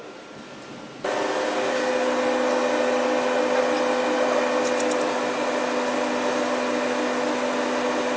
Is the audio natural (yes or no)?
yes